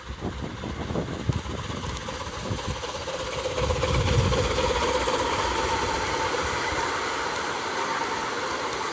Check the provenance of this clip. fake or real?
real